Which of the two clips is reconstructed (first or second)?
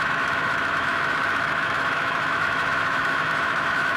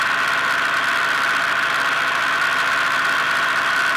first